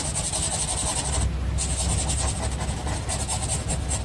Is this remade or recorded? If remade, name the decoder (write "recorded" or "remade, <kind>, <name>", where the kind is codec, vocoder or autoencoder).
recorded